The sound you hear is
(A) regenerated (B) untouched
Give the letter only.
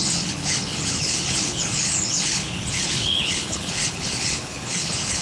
A